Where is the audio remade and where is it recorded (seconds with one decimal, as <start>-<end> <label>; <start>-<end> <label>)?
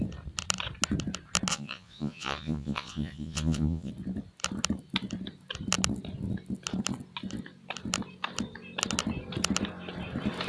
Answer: 0.0-1.5 recorded; 1.5-3.9 remade; 3.9-10.5 recorded